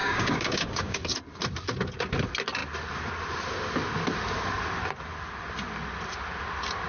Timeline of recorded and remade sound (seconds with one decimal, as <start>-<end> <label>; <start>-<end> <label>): 0.0-1.0 remade; 1.0-6.9 recorded